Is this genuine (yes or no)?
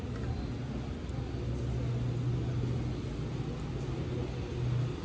yes